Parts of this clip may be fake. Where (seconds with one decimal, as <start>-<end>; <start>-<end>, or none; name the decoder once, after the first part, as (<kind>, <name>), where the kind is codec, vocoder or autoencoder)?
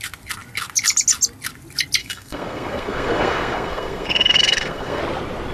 2.0-5.0 (codec, SNAC)